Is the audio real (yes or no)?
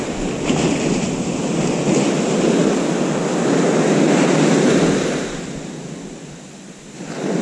yes